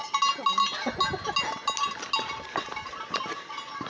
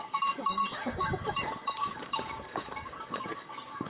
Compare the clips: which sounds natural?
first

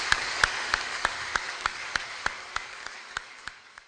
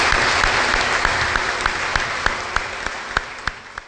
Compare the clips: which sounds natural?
second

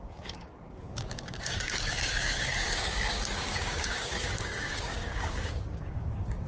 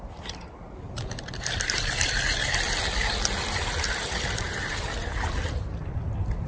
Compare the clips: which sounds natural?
second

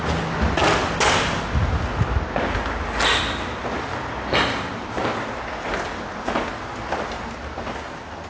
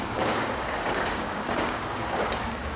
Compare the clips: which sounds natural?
first